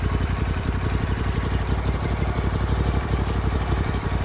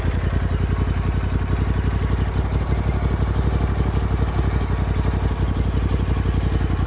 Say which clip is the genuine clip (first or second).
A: second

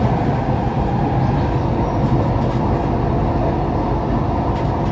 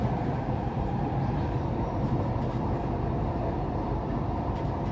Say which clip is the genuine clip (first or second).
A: first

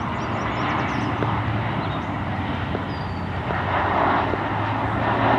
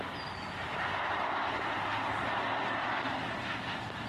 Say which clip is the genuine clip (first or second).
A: first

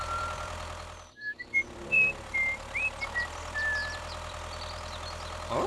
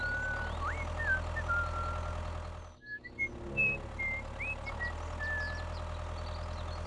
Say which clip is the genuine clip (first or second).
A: second